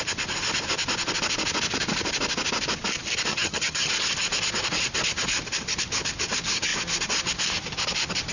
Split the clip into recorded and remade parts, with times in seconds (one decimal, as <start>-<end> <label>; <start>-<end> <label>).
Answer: 0.0-3.3 recorded; 3.3-3.9 remade; 3.9-8.3 recorded